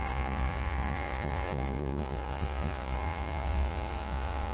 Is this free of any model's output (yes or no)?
no